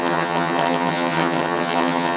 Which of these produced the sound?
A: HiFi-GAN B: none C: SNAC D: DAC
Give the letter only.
A